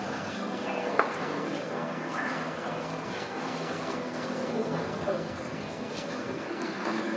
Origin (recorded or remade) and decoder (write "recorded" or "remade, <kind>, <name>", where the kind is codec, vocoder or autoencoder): remade, codec, SNAC